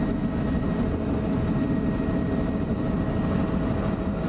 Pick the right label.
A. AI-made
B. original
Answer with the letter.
B